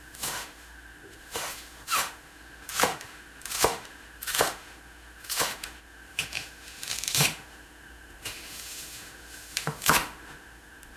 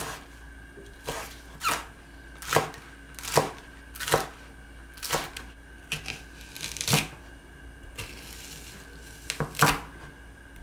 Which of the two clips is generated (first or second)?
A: first